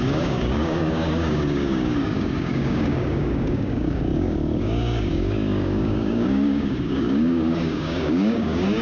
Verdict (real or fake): fake